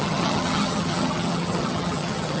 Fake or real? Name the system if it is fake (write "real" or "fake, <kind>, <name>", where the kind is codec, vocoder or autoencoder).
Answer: fake, vocoder, HiFi-GAN